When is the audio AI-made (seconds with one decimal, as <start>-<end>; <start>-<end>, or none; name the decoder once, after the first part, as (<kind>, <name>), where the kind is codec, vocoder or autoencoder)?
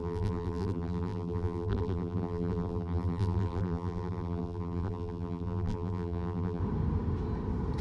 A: 0.0-6.6 (vocoder, BigVGAN v2)